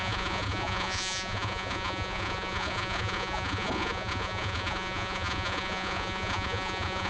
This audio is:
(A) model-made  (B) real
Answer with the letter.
A